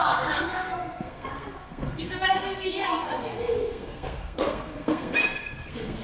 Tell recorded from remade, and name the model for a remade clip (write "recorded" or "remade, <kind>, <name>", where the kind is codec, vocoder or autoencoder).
remade, codec, SNAC